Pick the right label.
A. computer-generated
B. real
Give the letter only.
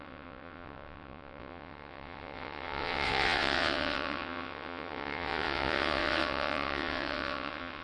A